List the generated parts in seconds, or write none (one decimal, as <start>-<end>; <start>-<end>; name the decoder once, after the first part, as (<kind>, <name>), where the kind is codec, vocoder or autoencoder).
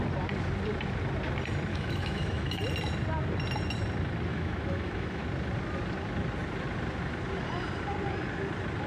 1.7-2.6 (autoencoder, DAC-VAE); 4.3-5.2